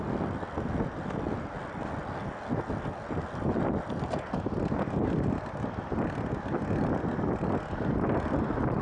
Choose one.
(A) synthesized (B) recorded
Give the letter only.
B